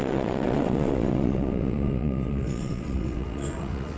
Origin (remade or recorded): remade